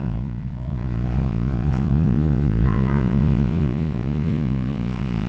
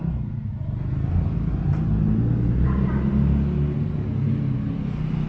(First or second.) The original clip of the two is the second